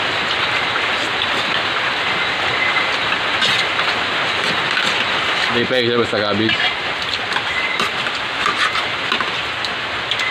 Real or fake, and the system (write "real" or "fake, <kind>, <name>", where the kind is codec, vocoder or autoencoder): real